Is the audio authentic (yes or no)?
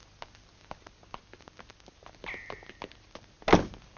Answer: yes